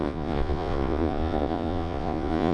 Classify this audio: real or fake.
fake